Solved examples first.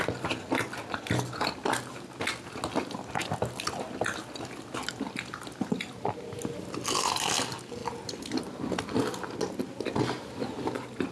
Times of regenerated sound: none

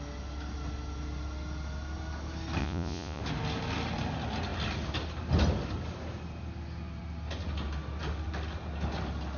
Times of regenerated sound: 2.6-3.2 (vocoder, Vocos)

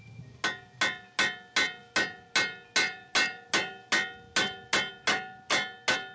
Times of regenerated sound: none

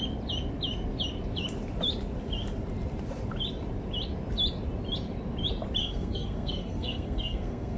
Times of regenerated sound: 5.8-7.8 (codec, SNAC)

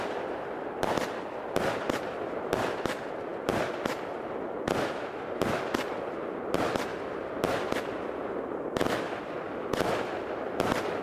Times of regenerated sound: none

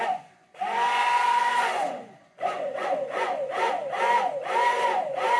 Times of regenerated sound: 0.0-5.4 (vocoder, Vocos)

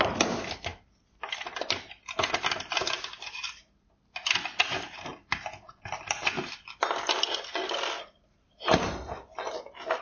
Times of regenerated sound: none

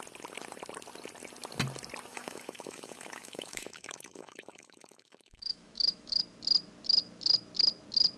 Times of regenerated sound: 2.1-6.2 (autoencoder, DAC-VAE)